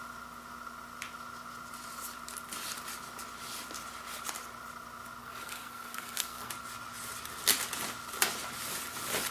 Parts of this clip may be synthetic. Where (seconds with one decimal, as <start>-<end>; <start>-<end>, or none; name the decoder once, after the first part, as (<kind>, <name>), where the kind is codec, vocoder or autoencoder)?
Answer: 5.2-6.5 (codec, SNAC)

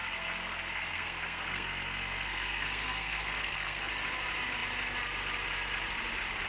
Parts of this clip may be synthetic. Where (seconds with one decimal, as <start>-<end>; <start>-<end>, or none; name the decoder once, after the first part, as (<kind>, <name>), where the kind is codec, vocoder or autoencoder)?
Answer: 0.0-3.9 (codec, SNAC)

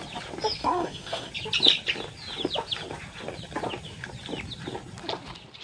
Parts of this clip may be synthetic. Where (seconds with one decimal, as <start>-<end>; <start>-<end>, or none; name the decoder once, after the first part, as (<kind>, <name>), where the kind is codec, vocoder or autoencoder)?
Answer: 0.6-1.3 (codec, SNAC)

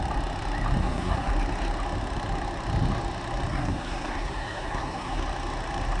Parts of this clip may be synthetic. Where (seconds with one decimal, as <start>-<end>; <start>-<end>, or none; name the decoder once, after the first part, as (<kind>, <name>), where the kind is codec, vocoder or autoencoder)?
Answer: 0.8-1.3 (codec, SNAC); 3.5-5.2

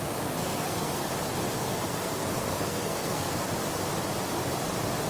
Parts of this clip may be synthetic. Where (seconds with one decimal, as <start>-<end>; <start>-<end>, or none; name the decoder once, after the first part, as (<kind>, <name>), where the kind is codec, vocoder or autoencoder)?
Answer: 0.4-1.1 (codec, SNAC); 1.6-3.4